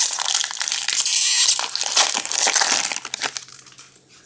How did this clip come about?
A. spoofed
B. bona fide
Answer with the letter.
B